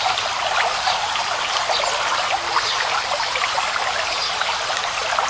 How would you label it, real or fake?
real